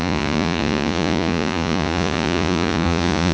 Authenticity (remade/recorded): remade